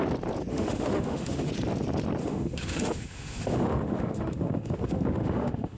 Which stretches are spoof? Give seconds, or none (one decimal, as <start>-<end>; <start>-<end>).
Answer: 0.5-1.5; 2.2-5.8